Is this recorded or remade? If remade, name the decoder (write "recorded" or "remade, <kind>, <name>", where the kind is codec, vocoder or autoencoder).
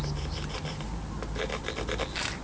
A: recorded